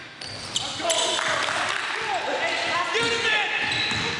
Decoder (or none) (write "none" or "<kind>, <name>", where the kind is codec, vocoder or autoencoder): none